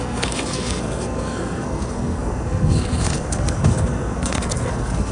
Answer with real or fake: fake